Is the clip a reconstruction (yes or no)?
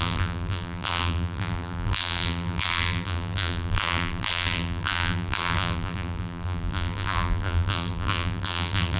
yes